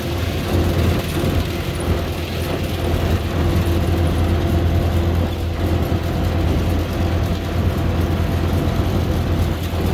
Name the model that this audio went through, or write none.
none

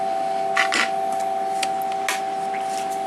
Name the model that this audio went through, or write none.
none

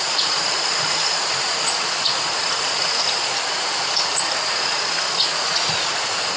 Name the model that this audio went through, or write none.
vocoder, Vocos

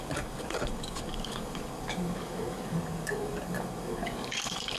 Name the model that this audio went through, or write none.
codec, DAC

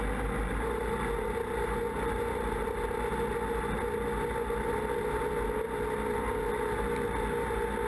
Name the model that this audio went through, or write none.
none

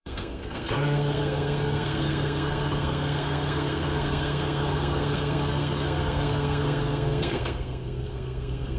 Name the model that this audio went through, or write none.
codec, SNAC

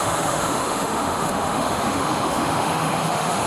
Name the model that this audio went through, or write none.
autoencoder, DAC-VAE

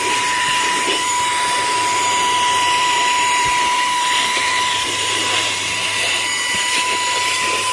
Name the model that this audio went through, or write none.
vocoder, BigVGAN v2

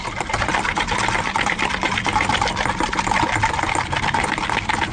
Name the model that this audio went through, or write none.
none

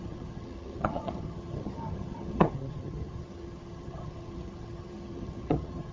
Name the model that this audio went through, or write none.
vocoder, HiFi-GAN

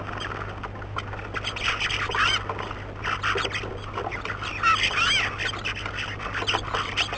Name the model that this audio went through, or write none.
none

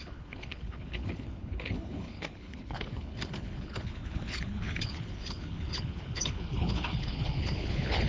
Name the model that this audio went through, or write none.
codec, HILCodec